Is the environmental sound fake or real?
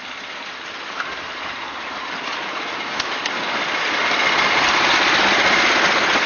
real